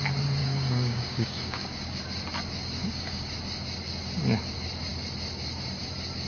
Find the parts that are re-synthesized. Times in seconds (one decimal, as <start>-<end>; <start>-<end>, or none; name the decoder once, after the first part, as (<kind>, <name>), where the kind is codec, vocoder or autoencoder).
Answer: 0.4-2.0 (codec, DAC); 2.8-3.3